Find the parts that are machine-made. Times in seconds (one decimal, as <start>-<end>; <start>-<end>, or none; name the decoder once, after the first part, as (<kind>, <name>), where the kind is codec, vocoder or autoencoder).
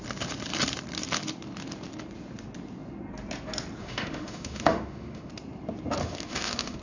3.8-5.3 (autoencoder, DAC-VAE); 6.0-6.8